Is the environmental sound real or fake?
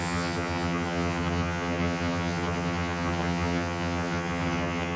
fake